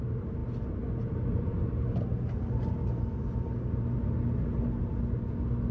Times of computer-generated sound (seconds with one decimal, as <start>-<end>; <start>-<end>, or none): none